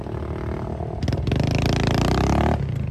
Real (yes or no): yes